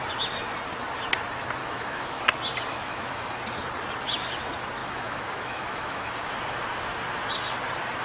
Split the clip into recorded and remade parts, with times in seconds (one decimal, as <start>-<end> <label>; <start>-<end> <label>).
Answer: 0.0-1.6 recorded; 1.6-2.2 remade; 2.2-2.7 recorded; 2.7-3.3 remade; 3.3-4.8 recorded; 4.8-6.1 remade; 6.1-8.0 recorded